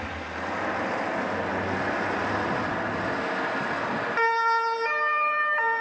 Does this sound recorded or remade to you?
recorded